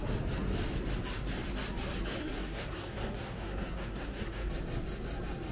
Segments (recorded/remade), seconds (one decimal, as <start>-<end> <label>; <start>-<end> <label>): 0.0-2.2 recorded; 2.2-4.5 remade; 4.5-5.5 recorded